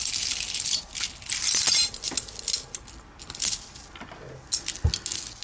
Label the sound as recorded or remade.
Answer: recorded